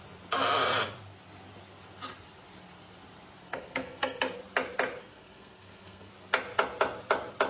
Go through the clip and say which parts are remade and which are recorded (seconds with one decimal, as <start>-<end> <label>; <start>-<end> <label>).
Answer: 0.0-3.4 recorded; 3.4-4.2 remade; 4.2-5.0 recorded; 5.0-6.1 remade; 6.1-7.5 recorded